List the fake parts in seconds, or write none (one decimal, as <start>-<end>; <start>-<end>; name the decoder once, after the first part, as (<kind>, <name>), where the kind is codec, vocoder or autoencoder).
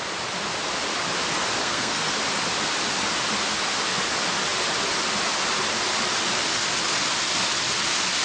1.6-2.1 (codec, SNAC)